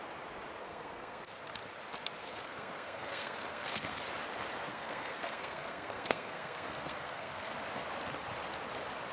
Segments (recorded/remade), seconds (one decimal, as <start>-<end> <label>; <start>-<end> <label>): 0.0-0.6 recorded; 0.6-1.3 remade; 1.3-2.2 recorded; 2.2-4.0 remade; 4.0-4.7 recorded; 4.7-7.5 remade; 7.5-9.1 recorded